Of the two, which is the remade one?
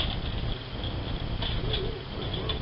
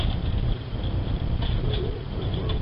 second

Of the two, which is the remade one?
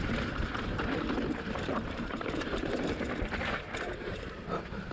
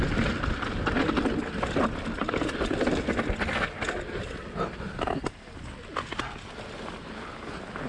first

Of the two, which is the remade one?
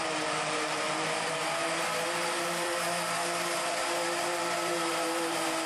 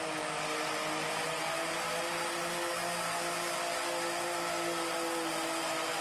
first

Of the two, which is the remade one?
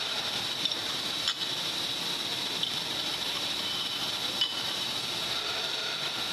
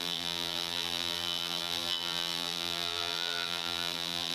second